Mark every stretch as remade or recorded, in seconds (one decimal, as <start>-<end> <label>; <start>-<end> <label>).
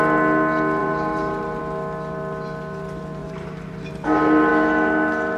0.0-0.8 recorded; 0.8-1.6 remade; 1.6-3.2 recorded; 3.2-3.9 remade; 3.9-5.4 recorded